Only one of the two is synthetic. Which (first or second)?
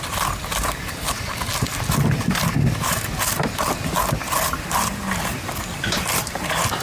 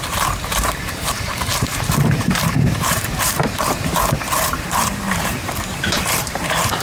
second